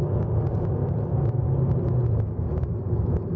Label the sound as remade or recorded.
recorded